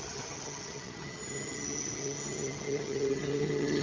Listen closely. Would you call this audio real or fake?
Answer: fake